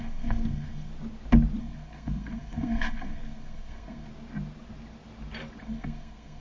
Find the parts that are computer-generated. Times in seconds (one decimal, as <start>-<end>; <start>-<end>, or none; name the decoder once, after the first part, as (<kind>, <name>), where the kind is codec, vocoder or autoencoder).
0.0-0.9 (codec, SNAC); 1.6-4.1; 5.6-6.4